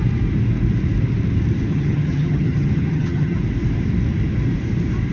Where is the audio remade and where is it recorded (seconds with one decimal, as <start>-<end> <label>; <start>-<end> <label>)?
0.0-1.7 recorded; 1.7-3.4 remade; 3.4-5.1 recorded